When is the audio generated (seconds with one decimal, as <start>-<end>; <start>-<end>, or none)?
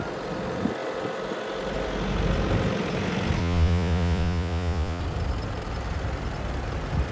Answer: 3.4-5.0